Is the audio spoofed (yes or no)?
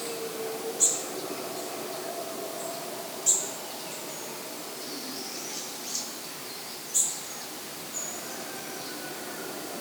no